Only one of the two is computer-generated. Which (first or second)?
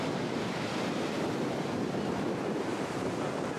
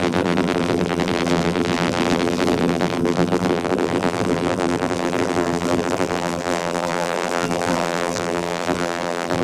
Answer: second